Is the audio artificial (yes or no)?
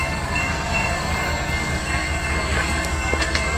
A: yes